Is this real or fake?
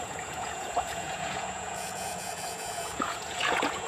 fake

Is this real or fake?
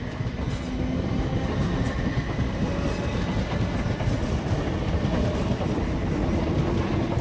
real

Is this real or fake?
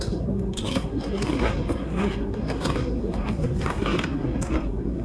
fake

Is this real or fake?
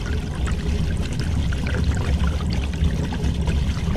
real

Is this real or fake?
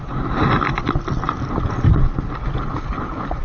real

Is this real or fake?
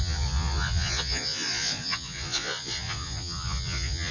fake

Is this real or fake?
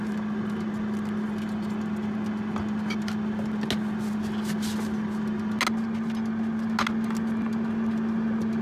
real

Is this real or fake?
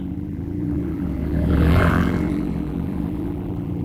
fake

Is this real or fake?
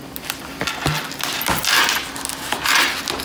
real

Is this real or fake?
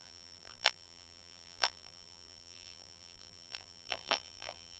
fake